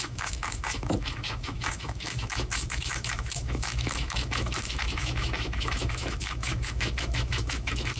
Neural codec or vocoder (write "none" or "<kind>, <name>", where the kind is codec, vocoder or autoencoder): autoencoder, DAC-VAE